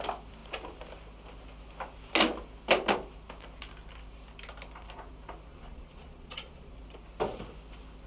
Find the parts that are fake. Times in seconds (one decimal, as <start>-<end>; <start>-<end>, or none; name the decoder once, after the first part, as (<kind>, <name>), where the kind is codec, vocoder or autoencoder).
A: 5.5-6.7 (vocoder, Vocos)